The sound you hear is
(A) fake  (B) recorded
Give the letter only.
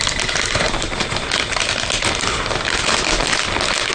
B